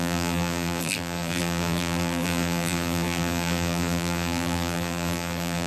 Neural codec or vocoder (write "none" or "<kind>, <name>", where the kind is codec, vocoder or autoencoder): vocoder, BigVGAN v2